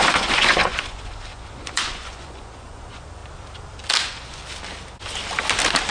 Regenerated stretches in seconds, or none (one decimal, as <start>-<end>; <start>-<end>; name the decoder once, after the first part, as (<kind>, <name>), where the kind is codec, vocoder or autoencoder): 0.0-3.2 (vocoder, Vocos); 4.0-4.4